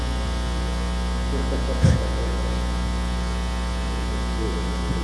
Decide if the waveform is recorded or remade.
recorded